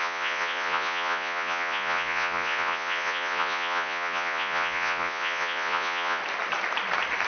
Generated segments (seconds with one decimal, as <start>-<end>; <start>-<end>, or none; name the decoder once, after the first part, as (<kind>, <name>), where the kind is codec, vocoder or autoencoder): 0.0-6.2 (vocoder, Vocos)